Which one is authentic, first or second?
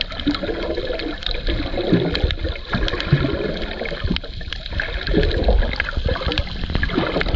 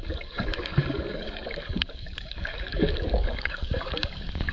first